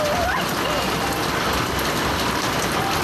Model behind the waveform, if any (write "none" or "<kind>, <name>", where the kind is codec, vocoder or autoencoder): none